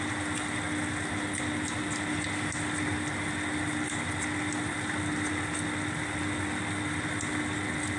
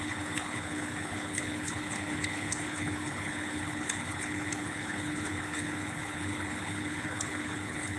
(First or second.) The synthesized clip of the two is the second